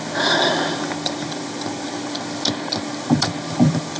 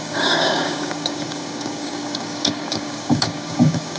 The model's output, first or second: second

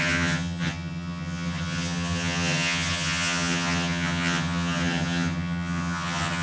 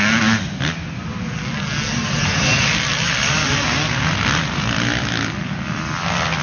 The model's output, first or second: first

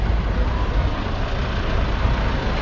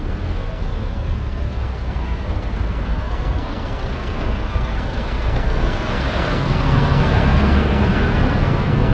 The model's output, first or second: second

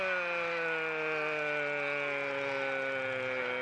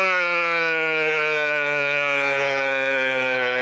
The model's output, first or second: second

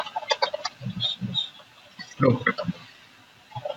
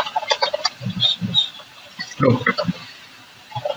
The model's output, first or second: second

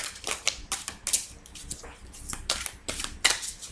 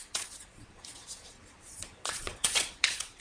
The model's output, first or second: second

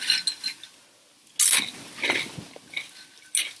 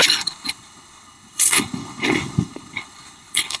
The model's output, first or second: second